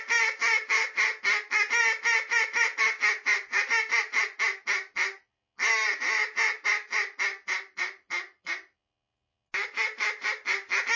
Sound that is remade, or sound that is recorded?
recorded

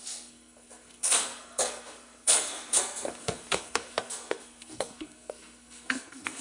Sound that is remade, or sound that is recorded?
remade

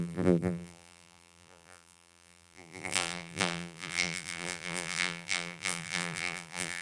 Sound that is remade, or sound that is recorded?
remade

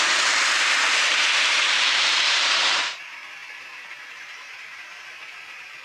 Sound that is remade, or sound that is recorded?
remade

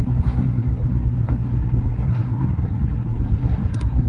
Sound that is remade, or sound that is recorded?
remade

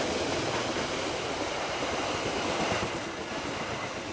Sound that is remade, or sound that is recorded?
recorded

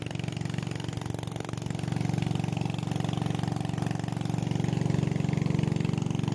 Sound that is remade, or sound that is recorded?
recorded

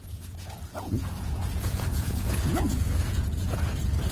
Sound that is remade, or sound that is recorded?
remade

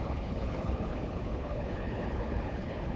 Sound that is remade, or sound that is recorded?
remade